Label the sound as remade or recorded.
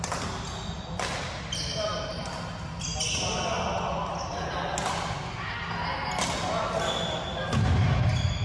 recorded